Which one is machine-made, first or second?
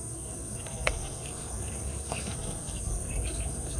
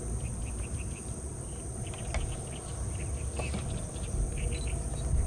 first